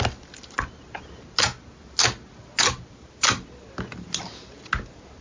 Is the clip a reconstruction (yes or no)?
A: no